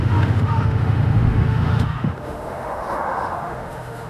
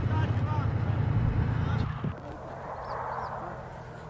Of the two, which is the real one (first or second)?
second